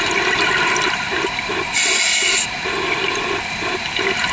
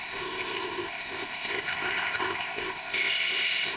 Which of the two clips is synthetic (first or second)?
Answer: second